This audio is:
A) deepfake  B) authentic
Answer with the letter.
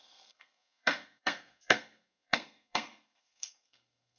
A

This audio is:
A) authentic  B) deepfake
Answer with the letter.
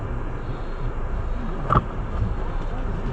A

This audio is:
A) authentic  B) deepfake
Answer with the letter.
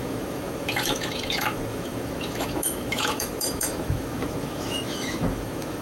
B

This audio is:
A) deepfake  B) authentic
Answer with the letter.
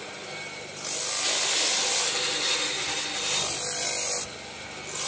B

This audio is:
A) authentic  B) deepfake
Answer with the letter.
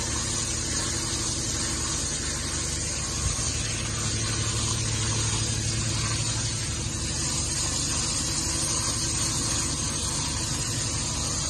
A